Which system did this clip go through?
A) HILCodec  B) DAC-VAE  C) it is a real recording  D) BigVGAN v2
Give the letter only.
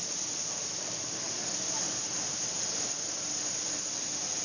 D